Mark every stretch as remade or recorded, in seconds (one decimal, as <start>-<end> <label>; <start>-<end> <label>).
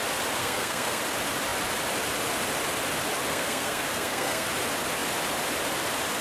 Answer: 0.0-0.4 recorded; 0.4-1.0 remade; 1.0-3.3 recorded; 3.3-4.5 remade; 4.5-6.2 recorded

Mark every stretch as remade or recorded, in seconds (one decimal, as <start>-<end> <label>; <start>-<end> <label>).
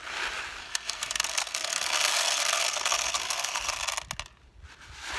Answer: 0.0-0.6 recorded; 0.6-3.7 remade; 3.7-5.2 recorded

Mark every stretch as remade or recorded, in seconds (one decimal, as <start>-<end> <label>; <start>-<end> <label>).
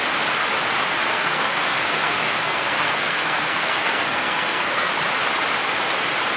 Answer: 0.0-1.1 recorded; 1.1-4.9 remade; 4.9-6.4 recorded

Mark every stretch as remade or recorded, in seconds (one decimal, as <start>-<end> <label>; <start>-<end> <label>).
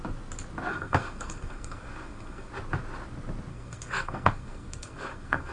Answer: 0.0-0.7 recorded; 0.7-2.5 remade; 2.5-3.5 recorded; 3.5-5.5 remade